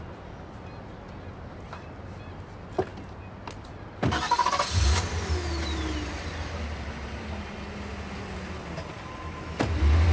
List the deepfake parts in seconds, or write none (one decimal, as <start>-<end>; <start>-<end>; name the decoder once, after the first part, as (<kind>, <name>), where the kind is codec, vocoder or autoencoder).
none